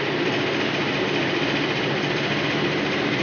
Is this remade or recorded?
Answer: recorded